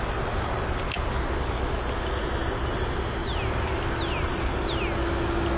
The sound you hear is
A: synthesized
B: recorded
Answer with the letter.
B